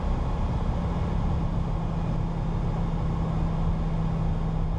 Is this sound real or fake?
real